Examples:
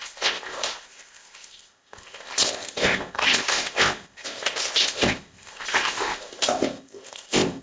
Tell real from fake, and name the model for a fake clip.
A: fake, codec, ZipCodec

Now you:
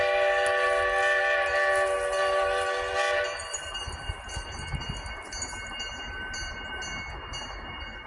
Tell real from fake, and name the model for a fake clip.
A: real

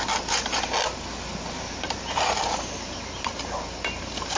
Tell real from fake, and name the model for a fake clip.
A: real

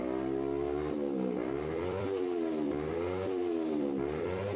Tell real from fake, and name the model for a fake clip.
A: fake, vocoder, BigVGAN v2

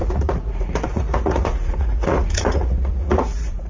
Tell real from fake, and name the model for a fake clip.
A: fake, vocoder, Vocos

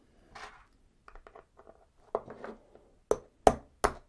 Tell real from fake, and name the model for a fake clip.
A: real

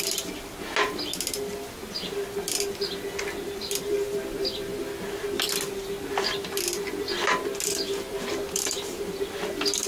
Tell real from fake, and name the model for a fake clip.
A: real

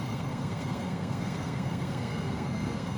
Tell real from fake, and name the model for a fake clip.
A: fake, codec, SNAC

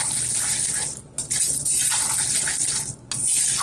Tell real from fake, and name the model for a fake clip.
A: real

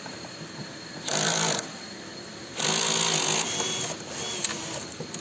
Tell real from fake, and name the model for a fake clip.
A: real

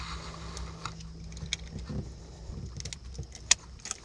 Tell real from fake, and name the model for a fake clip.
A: real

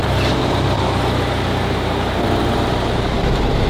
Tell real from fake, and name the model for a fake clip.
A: fake, vocoder, BigVGAN v2